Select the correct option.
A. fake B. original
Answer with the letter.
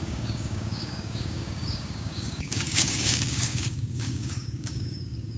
A